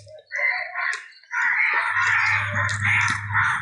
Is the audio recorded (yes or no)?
yes